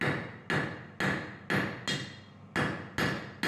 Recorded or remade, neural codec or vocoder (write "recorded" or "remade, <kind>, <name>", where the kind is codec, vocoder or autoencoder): recorded